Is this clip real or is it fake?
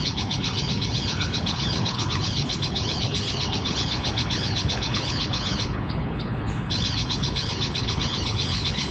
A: fake